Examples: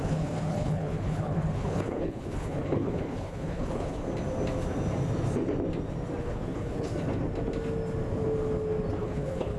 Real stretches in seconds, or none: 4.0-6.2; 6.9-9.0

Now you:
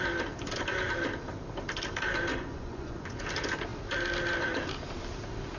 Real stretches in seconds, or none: 0.0-2.3; 3.2-5.6

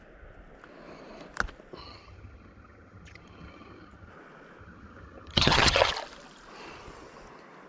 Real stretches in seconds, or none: 0.0-1.8; 4.1-4.6; 5.9-7.7

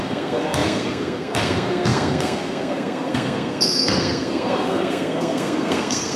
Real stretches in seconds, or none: none